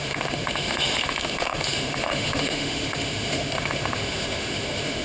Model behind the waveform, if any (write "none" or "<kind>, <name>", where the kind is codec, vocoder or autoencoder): autoencoder, DAC-VAE